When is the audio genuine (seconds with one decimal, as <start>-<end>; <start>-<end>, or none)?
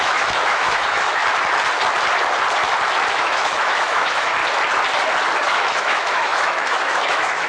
1.2-3.1; 4.4-5.5